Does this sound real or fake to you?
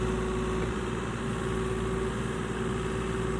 real